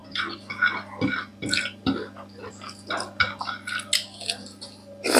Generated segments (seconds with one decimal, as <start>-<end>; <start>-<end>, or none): none